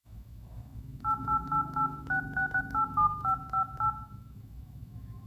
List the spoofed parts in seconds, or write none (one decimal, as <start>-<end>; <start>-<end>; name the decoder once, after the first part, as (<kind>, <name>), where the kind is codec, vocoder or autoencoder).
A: 0.0-5.3 (autoencoder, DAC-VAE)